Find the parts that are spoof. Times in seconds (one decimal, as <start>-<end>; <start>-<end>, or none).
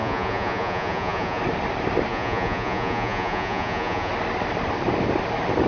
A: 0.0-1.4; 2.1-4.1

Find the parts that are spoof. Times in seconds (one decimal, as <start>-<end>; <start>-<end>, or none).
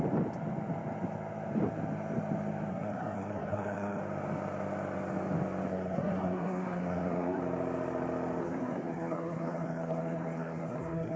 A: 2.7-4.0; 5.7-7.4; 8.4-11.2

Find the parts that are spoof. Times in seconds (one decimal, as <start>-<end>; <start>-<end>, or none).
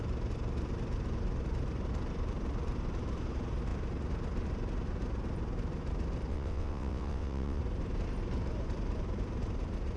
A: 6.3-7.6